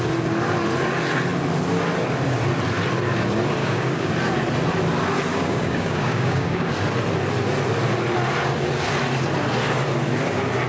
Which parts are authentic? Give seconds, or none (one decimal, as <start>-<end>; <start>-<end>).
0.0-3.6; 4.1-5.3; 6.7-10.7